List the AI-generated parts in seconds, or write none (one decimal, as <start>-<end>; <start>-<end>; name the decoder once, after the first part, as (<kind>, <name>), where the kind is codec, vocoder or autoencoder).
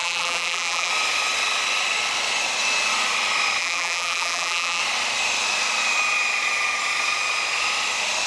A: 0.0-0.9 (vocoder, BigVGAN v2); 3.6-4.8